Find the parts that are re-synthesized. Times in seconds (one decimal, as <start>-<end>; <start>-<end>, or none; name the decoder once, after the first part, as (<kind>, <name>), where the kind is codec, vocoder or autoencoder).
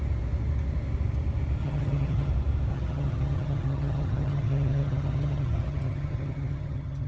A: 1.6-2.3 (vocoder, HiFi-GAN); 2.7-7.1